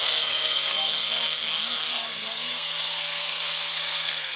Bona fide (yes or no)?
no